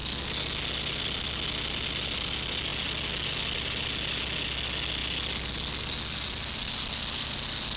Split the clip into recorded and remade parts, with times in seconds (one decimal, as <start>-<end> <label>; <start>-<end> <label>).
0.0-7.8 recorded